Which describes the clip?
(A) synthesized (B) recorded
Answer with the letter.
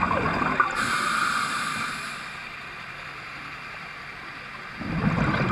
B